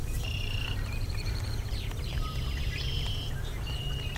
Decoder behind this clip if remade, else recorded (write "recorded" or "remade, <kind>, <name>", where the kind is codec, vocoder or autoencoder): remade, vocoder, BigVGAN v2